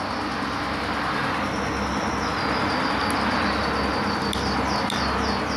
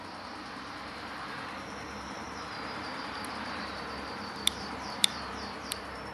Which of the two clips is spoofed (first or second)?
second